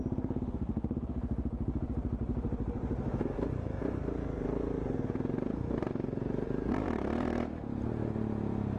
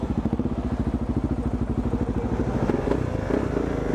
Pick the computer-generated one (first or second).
first